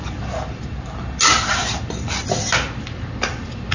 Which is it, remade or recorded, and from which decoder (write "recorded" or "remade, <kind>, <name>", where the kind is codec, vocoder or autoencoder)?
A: recorded